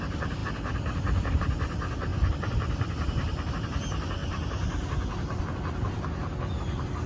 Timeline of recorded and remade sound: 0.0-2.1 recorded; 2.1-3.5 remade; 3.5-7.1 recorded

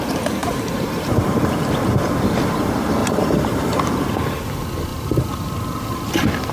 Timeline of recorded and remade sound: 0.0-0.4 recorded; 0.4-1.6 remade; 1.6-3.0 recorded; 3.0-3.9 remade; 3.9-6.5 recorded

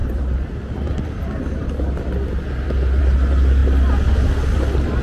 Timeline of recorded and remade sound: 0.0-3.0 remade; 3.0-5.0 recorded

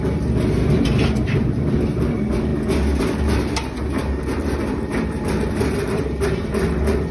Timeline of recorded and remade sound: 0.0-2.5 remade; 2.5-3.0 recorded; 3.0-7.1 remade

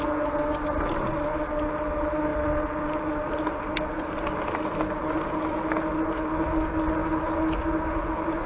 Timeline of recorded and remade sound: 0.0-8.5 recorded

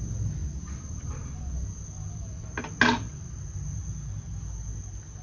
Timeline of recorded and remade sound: 0.0-5.2 recorded

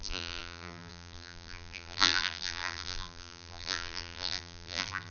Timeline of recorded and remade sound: 0.0-5.1 remade